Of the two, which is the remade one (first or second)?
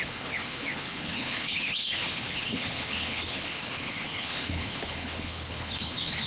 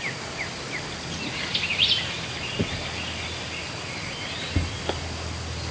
first